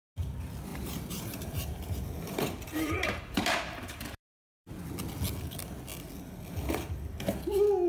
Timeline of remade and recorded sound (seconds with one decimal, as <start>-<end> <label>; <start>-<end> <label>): 0.0-0.7 recorded; 0.7-4.9 remade; 4.9-7.9 recorded